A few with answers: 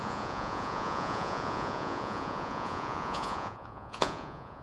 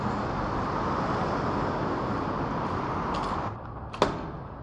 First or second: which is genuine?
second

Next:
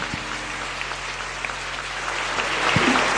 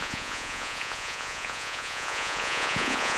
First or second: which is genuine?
first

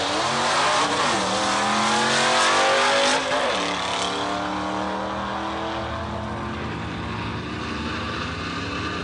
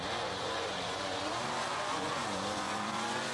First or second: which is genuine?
first